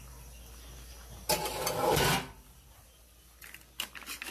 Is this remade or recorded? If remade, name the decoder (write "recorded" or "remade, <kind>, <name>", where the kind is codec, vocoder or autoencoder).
recorded